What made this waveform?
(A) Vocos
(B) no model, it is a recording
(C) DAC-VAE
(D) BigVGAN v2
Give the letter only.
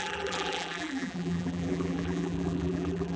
D